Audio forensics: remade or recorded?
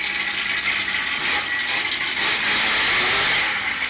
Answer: recorded